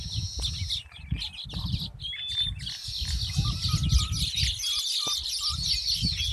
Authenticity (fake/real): real